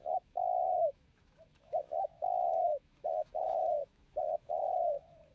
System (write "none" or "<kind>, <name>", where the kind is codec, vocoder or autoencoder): autoencoder, DAC-VAE